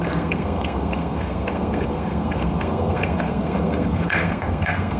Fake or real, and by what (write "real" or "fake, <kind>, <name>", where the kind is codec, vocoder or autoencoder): fake, codec, SNAC